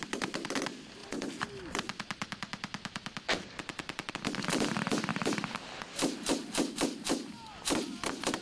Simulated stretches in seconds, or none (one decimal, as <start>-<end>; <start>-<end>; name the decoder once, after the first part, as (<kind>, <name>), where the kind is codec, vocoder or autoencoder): 1.0-4.1 (vocoder, BigVGAN v2); 5.1-7.8